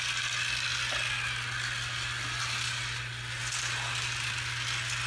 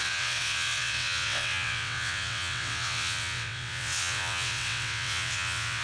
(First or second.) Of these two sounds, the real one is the first